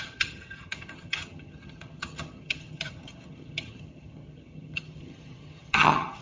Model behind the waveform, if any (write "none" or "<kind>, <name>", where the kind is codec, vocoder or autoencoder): vocoder, HiFi-GAN